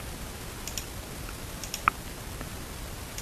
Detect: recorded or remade recorded